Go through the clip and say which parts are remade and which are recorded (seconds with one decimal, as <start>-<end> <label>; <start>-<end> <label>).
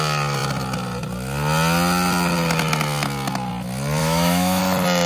0.0-4.0 recorded; 4.0-4.6 remade; 4.6-5.1 recorded